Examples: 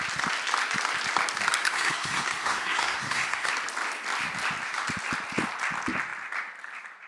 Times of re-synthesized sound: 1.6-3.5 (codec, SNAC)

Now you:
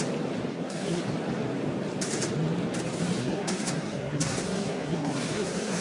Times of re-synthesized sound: 0.5-1.0 (codec, SNAC); 3.2-5.8

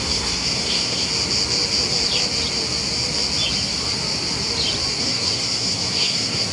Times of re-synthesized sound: 0.0-1.1 (codec, SNAC); 5.0-6.5